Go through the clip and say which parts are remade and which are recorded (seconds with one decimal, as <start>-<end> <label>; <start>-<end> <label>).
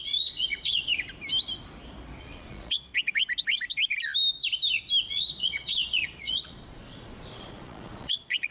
0.0-0.9 remade; 0.9-2.2 recorded; 2.2-2.9 remade; 2.9-5.1 recorded; 5.1-8.5 remade